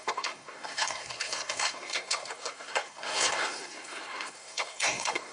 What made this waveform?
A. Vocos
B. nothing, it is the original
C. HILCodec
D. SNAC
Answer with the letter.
D